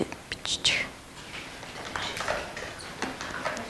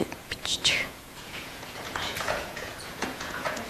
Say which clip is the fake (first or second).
second